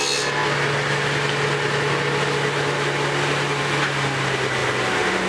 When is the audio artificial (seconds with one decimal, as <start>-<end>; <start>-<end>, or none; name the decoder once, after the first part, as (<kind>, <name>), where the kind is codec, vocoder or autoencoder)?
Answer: none